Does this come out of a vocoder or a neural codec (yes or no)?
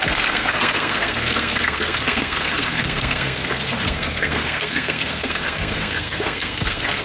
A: yes